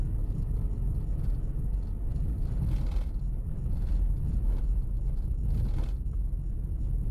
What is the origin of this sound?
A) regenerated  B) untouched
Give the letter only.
B